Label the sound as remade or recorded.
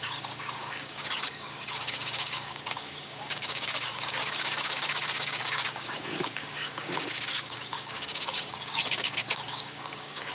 remade